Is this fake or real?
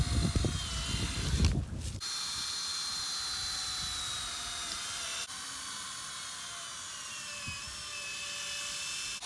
real